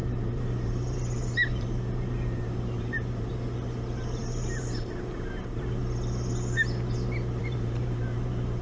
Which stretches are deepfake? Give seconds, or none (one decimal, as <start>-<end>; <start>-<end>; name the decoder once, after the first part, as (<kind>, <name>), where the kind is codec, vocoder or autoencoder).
0.0-3.3 (vocoder, BigVGAN v2); 4.2-5.8; 7.4-8.6